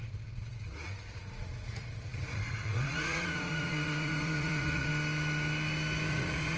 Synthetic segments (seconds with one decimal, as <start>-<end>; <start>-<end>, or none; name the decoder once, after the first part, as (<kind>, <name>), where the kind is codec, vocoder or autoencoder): 0.0-4.9 (vocoder, Vocos); 6.1-6.6